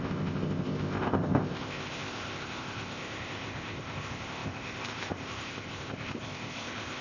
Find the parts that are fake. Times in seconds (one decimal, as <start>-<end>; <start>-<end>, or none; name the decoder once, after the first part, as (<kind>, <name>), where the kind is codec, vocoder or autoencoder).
0.0-7.0 (codec, ZipCodec)